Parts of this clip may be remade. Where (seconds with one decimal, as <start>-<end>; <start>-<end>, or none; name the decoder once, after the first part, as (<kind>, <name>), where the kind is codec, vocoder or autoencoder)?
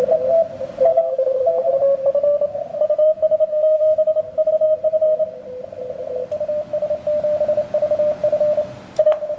0.9-1.7 (codec, DAC); 2.7-4.5